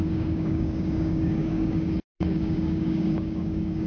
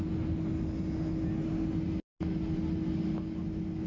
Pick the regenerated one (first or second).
first